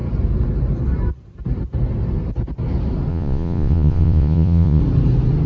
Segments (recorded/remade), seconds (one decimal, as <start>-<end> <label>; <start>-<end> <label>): 0.0-3.1 recorded; 3.1-4.8 remade; 4.8-5.5 recorded